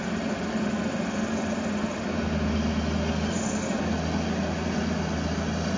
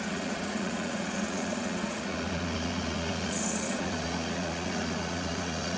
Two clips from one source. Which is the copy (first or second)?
second